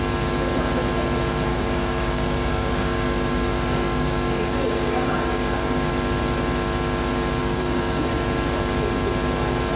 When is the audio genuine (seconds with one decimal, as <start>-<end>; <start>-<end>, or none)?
0.0-1.5; 5.9-7.4; 8.1-9.8